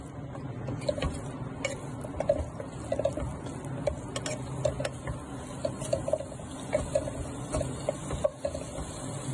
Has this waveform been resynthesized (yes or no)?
no